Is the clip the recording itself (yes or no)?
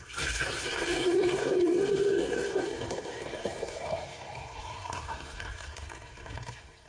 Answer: no